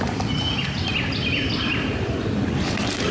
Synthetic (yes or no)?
yes